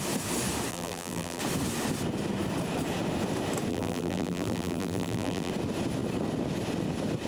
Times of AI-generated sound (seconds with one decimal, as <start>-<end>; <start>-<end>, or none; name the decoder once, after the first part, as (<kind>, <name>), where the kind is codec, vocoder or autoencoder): 0.7-1.4 (vocoder, BigVGAN v2); 3.7-5.5